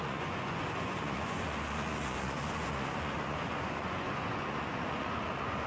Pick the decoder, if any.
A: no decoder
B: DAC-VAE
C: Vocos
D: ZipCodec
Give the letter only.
C